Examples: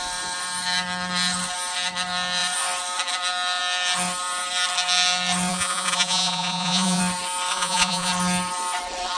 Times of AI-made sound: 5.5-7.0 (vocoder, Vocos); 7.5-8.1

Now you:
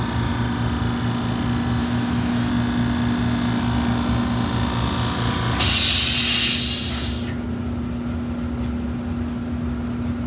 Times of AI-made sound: 1.8-2.5 (autoencoder, DAC-VAE)

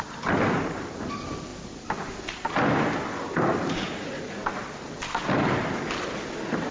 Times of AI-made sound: none

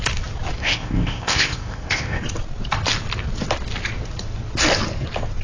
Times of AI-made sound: 0.6-2.2 (codec, ZipCodec)

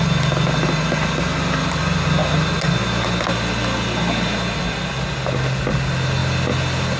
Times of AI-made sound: none

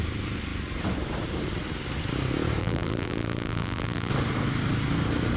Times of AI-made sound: 2.6-4.1 (vocoder, BigVGAN v2)

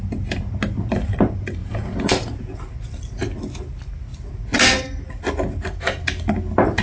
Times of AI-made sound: 1.6-2.6 (vocoder, Vocos)